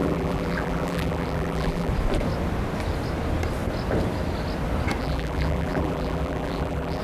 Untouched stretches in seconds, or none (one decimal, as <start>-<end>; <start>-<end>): 1.9-5.0